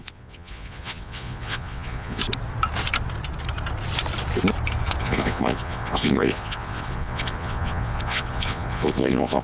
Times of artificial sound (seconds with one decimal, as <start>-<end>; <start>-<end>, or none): 0.0-2.2; 5.0-9.4